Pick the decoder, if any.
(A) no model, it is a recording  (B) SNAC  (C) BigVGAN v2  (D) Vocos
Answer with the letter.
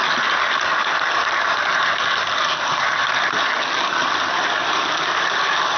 A